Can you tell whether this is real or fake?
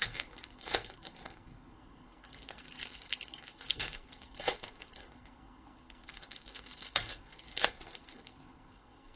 fake